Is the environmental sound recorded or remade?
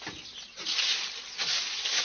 recorded